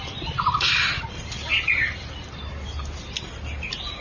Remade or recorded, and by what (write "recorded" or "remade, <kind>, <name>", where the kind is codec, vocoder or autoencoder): recorded